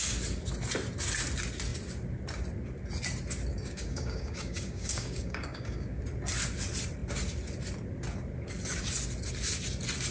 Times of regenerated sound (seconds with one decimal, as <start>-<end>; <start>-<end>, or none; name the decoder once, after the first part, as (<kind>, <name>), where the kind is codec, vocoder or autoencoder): 3.5-6.0 (codec, DAC)